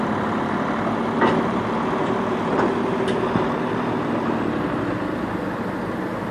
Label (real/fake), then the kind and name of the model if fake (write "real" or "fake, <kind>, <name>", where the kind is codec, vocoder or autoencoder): real